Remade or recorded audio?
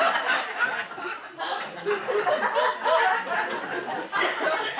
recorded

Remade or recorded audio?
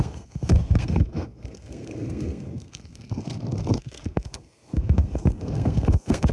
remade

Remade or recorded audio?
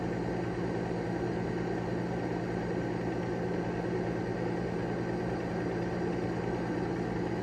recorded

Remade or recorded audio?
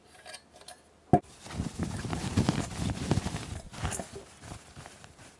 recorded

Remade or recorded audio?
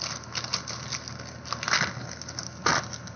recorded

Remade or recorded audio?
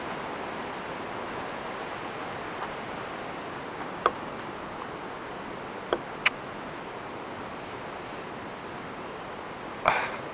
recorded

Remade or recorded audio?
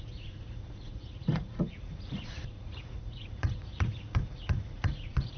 remade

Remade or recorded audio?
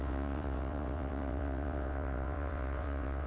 remade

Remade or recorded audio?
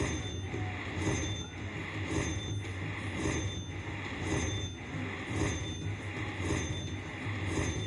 recorded